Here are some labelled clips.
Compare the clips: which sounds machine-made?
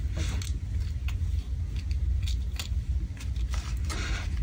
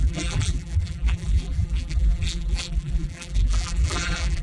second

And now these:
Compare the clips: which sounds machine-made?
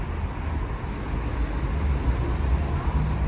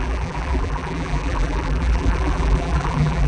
second